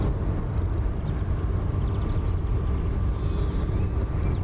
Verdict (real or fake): real